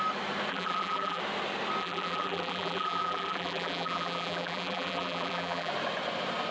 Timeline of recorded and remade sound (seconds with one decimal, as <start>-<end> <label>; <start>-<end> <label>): 0.0-0.5 recorded; 0.5-1.2 remade; 1.2-1.8 recorded; 1.8-5.7 remade; 5.7-6.5 recorded